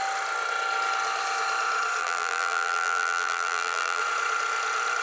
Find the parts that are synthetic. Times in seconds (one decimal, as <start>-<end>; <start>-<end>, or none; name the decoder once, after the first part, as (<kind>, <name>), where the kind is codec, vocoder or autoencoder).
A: 2.0-4.0 (vocoder, BigVGAN v2)